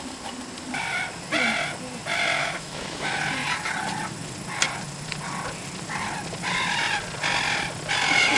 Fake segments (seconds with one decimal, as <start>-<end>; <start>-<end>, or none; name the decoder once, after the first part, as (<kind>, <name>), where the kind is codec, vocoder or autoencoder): 2.4-3.2 (autoencoder, DAC-VAE)